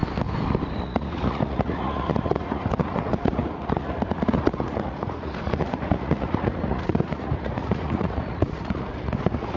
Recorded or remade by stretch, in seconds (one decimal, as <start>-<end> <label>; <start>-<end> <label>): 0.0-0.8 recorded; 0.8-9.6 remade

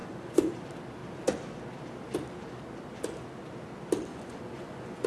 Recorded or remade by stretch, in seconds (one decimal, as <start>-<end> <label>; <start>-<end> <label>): 0.0-0.5 remade; 0.5-4.1 recorded; 4.1-5.1 remade

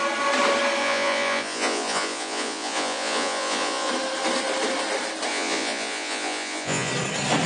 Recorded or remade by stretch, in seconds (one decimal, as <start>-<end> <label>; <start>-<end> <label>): 0.0-0.8 recorded; 0.8-3.9 remade; 3.9-5.3 recorded; 5.3-6.9 remade; 6.9-7.5 recorded

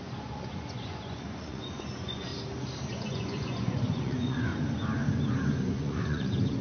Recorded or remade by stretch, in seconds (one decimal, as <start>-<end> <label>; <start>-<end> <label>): 0.0-2.3 remade; 2.3-2.9 recorded; 2.9-4.5 remade; 4.5-5.6 recorded; 5.6-6.6 remade

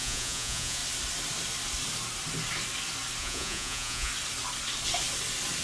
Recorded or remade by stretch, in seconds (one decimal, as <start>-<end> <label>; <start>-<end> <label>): 0.0-0.8 remade; 0.8-3.2 recorded; 3.2-4.1 remade; 4.1-5.6 recorded

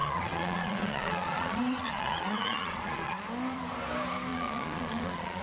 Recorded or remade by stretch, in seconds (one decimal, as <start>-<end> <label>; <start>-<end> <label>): 0.0-3.2 remade; 3.2-4.3 recorded; 4.3-5.4 remade

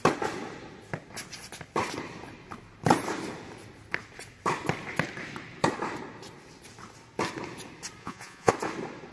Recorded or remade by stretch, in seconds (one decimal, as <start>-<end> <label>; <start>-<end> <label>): 0.0-8.0 recorded; 8.0-8.5 remade; 8.5-9.1 recorded

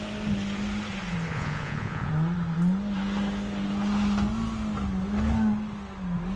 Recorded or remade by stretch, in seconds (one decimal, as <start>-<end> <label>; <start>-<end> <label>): 0.0-1.3 recorded; 1.3-2.1 remade; 2.1-6.4 recorded